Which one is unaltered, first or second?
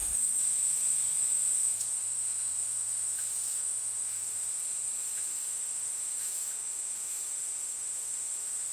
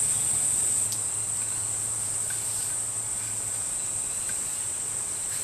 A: second